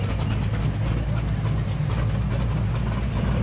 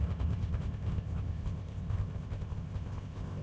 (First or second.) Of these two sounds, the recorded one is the first